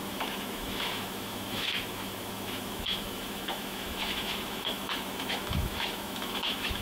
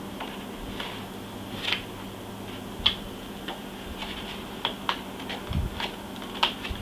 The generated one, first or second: first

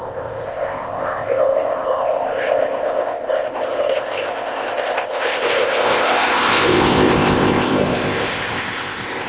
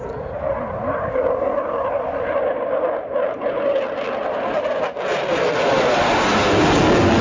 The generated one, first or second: first